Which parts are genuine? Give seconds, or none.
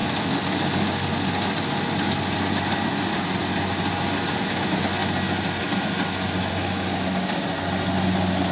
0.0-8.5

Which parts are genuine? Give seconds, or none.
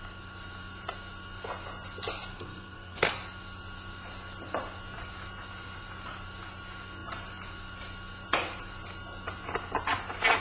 0.0-2.3; 3.1-10.4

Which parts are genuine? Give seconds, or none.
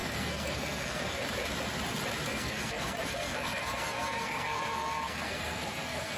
1.2-2.3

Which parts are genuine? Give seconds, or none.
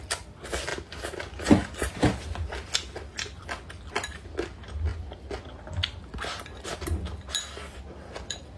0.0-8.6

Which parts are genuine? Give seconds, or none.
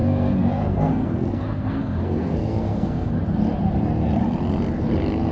3.1-5.3